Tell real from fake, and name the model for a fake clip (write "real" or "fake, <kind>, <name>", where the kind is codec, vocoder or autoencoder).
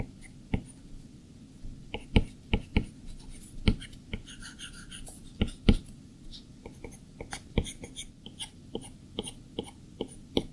real